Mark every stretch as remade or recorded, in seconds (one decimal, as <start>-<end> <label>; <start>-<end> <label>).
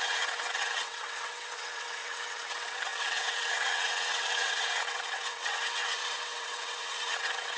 0.0-7.6 remade